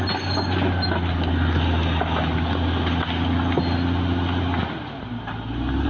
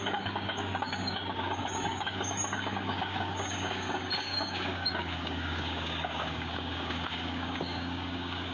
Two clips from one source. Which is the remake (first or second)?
second